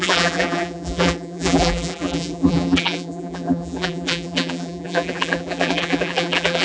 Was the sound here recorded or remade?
remade